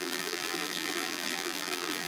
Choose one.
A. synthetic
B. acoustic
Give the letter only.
A